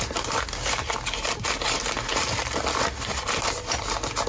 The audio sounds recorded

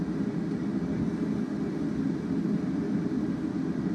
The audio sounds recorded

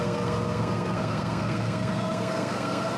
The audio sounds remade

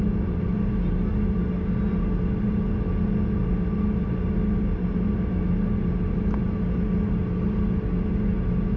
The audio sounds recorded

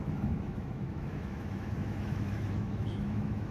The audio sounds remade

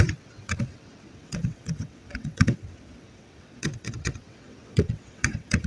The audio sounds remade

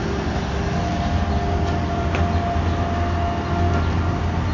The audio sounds recorded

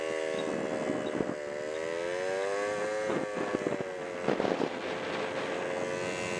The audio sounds recorded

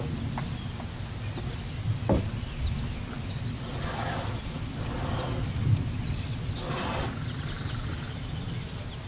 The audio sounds recorded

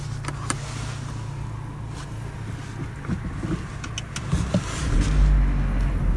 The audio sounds recorded